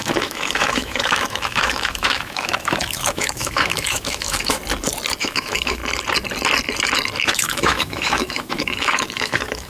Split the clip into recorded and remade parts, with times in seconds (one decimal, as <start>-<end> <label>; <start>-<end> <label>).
0.0-4.6 remade; 4.6-5.2 recorded; 5.2-5.8 remade; 5.8-7.2 recorded; 7.2-9.7 remade